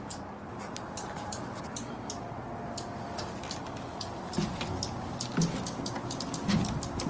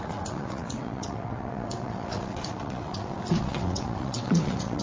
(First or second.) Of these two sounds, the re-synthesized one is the second